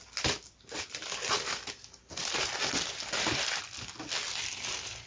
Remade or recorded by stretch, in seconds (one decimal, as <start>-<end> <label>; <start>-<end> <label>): 0.0-5.1 recorded